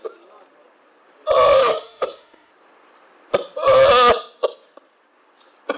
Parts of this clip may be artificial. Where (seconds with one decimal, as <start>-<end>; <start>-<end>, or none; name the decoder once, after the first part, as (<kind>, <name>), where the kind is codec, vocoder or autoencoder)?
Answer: 1.6-2.5 (autoencoder, DAC-VAE)